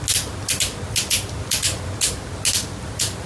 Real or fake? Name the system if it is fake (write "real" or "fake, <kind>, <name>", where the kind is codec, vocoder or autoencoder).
real